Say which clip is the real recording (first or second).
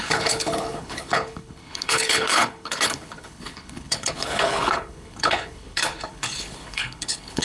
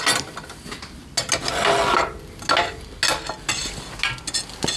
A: second